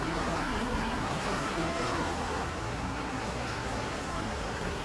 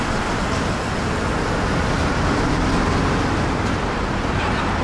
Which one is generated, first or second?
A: first